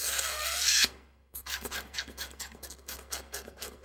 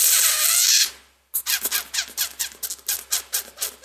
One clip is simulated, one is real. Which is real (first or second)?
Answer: second